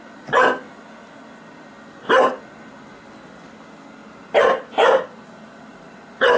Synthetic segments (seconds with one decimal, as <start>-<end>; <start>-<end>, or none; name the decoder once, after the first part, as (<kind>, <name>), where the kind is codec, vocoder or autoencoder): none